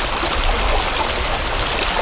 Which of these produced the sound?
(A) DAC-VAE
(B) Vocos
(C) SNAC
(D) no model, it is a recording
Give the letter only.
D